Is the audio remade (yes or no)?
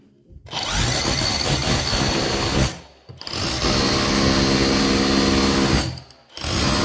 no